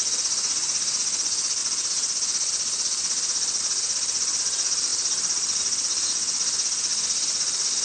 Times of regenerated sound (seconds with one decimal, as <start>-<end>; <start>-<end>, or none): none